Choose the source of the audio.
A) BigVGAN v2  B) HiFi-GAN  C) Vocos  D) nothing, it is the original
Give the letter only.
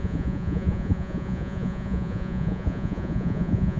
C